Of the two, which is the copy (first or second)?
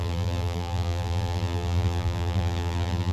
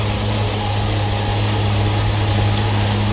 first